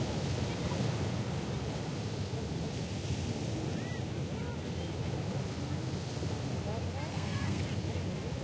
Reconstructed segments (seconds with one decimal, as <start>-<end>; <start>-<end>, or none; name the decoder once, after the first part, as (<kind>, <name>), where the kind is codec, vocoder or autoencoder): 7.1-7.6 (codec, SNAC)